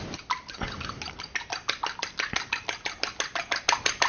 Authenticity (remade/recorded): recorded